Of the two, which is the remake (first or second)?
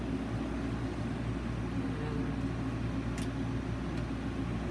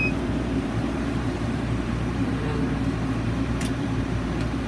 second